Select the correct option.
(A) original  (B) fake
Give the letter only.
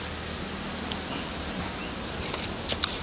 A